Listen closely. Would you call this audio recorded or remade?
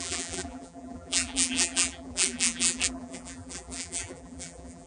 remade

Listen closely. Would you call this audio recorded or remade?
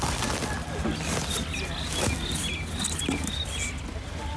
recorded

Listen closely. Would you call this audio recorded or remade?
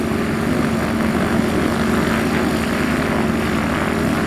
recorded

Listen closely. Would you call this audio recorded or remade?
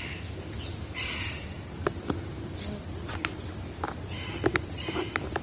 recorded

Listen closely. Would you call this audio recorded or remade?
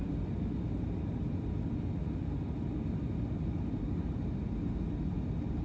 recorded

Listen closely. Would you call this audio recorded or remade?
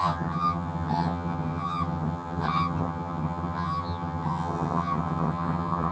remade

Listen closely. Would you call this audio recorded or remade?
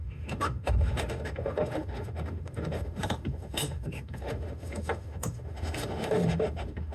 remade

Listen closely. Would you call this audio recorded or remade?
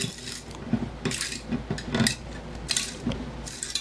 recorded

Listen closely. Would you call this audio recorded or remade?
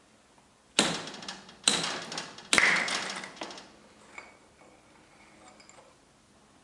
recorded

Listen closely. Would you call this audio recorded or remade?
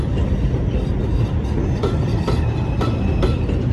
recorded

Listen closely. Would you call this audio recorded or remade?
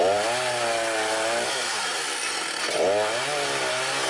recorded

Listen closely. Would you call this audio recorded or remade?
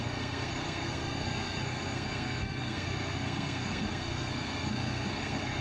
remade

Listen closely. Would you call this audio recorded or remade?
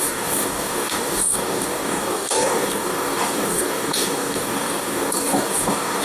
remade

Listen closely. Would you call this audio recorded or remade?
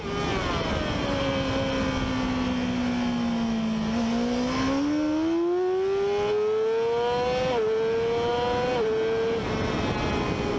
recorded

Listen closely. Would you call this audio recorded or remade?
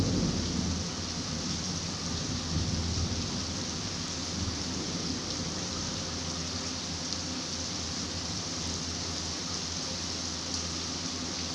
recorded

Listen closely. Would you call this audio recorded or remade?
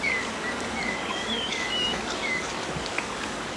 remade